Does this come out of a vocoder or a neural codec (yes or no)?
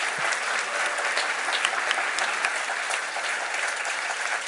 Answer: no